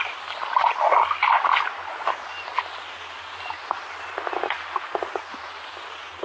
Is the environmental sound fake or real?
real